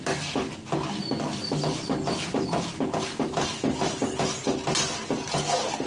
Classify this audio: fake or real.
real